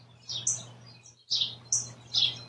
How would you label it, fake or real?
real